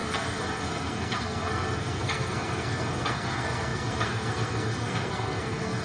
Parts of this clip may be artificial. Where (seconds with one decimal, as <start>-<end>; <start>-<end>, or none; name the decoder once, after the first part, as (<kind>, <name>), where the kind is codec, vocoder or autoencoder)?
0.0-5.8 (codec, SNAC)